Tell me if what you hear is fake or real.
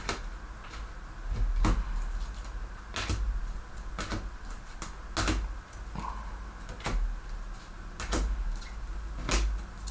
real